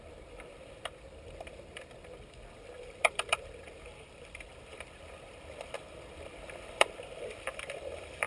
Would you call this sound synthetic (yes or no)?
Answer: yes